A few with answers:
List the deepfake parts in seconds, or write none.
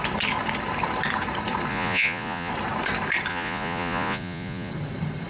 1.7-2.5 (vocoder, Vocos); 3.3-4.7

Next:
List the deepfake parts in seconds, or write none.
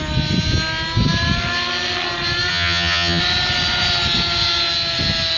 2.5-3.2 (vocoder, HiFi-GAN)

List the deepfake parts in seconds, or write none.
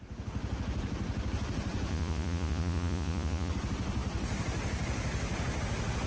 1.9-3.5 (vocoder, Vocos)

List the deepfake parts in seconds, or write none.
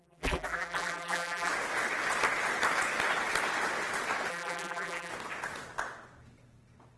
0.0-1.5 (vocoder, BigVGAN v2); 4.3-5.1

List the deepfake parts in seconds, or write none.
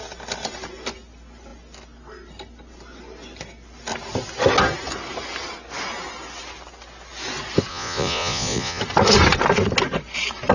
7.7-8.8 (vocoder, Vocos)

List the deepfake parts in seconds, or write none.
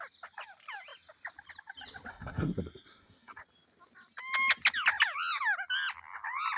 2.1-3.4 (codec, SNAC)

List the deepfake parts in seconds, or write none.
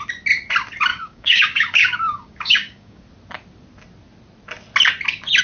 0.9-3.0 (codec, DAC)